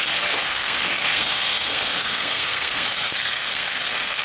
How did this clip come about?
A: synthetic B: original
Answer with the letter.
A